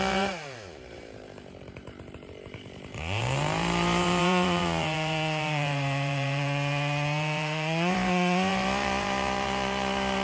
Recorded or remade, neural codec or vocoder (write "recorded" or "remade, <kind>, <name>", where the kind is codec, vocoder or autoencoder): remade, vocoder, BigVGAN v2